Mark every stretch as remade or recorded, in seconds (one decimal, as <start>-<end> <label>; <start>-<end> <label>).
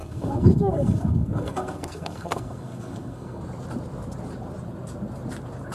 0.0-3.4 remade; 3.4-5.7 recorded